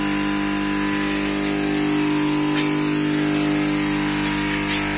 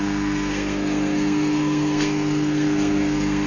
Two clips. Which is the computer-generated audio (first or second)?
second